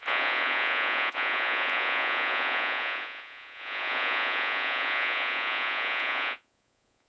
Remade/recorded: remade